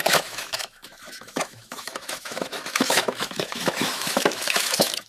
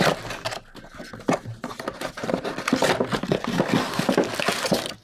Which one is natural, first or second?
second